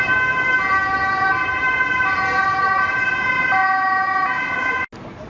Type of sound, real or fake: real